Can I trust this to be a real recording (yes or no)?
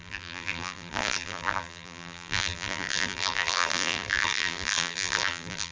no